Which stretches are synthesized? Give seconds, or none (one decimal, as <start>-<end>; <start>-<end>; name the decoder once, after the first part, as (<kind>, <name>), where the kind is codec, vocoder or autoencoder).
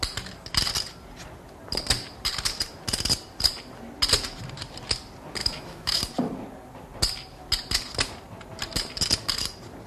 5.4-6.0 (autoencoder, DAC-VAE)